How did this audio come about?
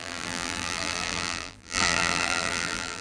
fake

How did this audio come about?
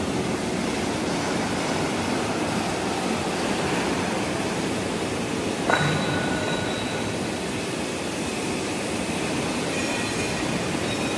fake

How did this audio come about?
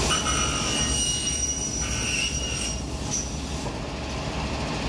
real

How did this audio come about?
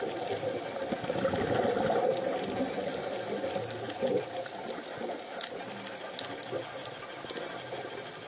real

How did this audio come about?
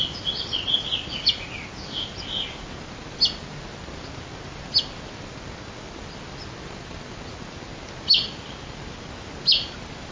real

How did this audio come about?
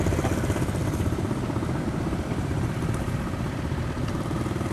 fake